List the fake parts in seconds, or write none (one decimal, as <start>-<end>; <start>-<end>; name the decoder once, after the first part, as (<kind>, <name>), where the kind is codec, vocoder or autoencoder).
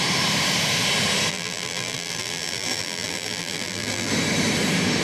1.3-4.1 (vocoder, BigVGAN v2)